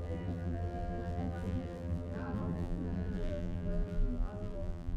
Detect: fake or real fake